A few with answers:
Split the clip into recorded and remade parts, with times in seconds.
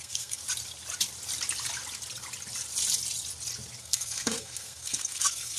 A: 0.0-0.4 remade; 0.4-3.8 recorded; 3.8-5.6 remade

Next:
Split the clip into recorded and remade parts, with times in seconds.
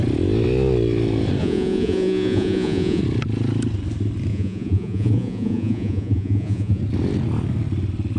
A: 0.0-1.4 recorded; 1.4-3.0 remade; 3.0-4.3 recorded; 4.3-6.8 remade; 6.8-8.2 recorded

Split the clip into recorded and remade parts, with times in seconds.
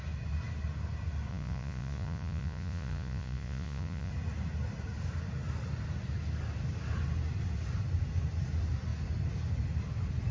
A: 0.0-1.3 recorded; 1.3-4.1 remade; 4.1-10.3 recorded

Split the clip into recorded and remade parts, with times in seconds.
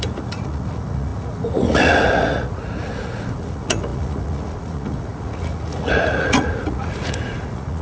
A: 0.0-7.8 remade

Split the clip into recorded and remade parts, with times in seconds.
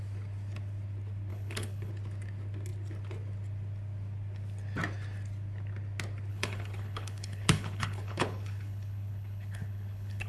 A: 0.0-1.3 recorded; 1.3-1.9 remade; 1.9-6.3 recorded; 6.3-10.3 remade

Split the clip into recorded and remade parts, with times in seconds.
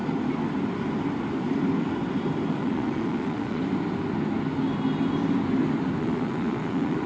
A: 0.0-2.5 recorded; 2.5-3.6 remade; 3.6-6.0 recorded; 6.0-7.1 remade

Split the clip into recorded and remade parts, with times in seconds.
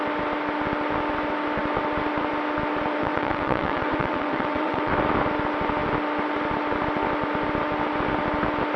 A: 0.0-3.0 recorded; 3.0-4.9 remade; 4.9-8.8 recorded